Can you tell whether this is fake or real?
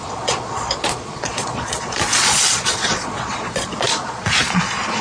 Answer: fake